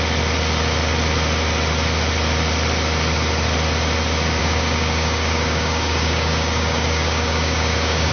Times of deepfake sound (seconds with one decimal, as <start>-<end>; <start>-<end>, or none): 4.4-8.1